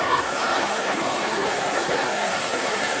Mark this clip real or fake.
fake